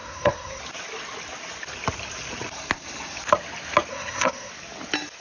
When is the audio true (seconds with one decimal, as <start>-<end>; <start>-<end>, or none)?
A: 0.6-3.9; 4.5-5.2